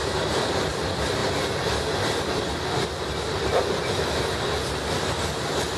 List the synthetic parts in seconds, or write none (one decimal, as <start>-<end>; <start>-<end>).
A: 0.0-0.7